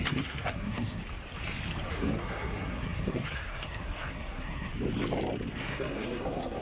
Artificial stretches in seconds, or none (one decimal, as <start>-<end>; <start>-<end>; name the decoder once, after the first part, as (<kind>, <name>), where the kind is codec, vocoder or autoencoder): 0.0-1.0 (codec, SNAC); 1.9-4.7; 5.6-6.6